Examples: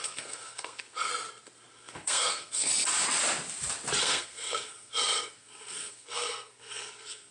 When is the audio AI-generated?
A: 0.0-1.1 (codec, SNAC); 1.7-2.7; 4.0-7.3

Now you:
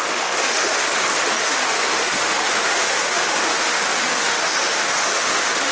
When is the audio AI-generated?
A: 0.0-0.7 (autoencoder, DAC-VAE); 1.4-5.7